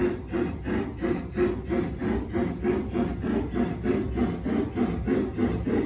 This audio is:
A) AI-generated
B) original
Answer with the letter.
B